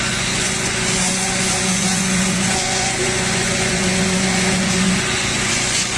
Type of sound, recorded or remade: remade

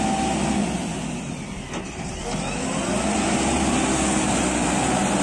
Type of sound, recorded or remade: recorded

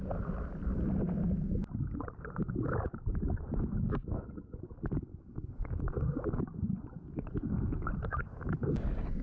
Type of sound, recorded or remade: recorded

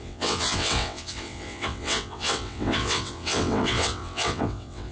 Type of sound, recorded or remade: remade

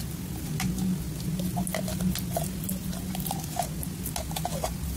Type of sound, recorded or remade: recorded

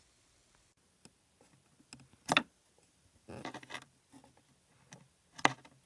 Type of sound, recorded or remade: recorded